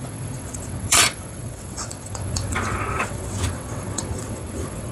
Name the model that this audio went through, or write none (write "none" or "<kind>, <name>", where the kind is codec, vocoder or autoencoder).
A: vocoder, WaveNeXt